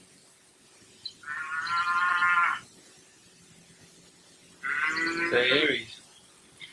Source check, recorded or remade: recorded